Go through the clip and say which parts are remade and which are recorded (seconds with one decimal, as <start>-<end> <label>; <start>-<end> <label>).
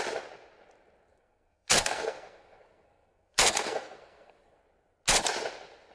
0.0-1.1 recorded; 1.1-4.6 remade; 4.6-5.9 recorded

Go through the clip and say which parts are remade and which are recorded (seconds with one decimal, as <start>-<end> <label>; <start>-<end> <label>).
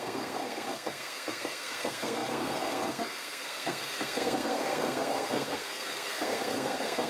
0.0-7.1 remade